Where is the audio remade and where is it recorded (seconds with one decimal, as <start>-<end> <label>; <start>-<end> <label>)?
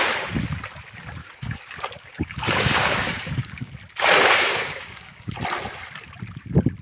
0.0-1.2 recorded; 1.2-3.7 remade; 3.7-4.5 recorded; 4.5-5.3 remade; 5.3-6.8 recorded